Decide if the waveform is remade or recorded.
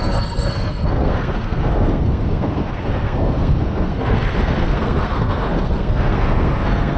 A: remade